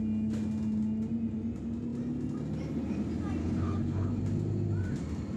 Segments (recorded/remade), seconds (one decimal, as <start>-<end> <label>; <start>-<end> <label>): 0.0-3.4 recorded; 3.4-4.2 remade; 4.2-5.4 recorded